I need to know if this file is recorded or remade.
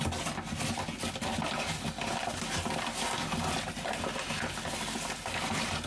recorded